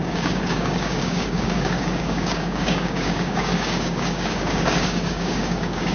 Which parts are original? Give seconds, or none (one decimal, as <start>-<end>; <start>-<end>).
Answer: none